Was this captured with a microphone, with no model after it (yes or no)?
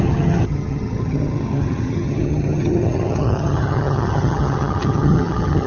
no